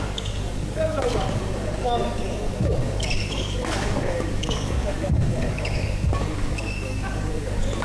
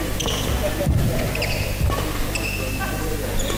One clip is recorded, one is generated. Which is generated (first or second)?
first